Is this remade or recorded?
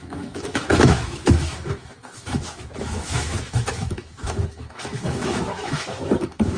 remade